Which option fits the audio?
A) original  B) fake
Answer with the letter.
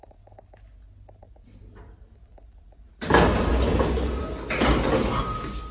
A